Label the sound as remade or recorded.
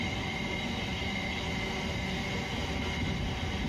recorded